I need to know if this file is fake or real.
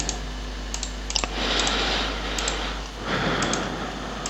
real